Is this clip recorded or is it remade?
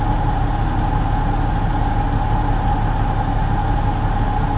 recorded